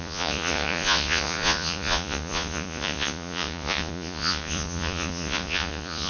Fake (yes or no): yes